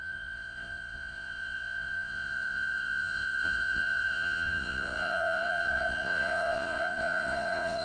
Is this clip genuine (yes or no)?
no